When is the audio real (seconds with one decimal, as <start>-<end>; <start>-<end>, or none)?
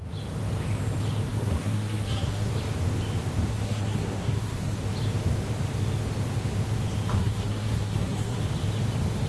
0.0-1.3; 2.5-3.5; 4.8-7.2; 8.4-9.3